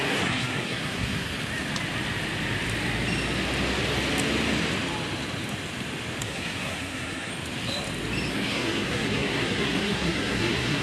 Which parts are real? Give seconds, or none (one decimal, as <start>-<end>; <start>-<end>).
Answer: 1.3-6.2; 7.3-8.3